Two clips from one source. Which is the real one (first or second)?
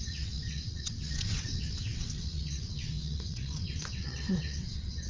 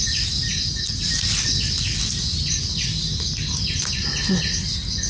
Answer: second